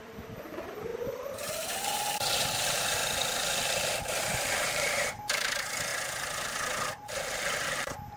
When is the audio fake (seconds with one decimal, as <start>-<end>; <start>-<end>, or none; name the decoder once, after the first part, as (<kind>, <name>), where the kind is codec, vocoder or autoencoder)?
0.0-3.0 (vocoder, BigVGAN v2); 4.1-5.9; 7.7-8.2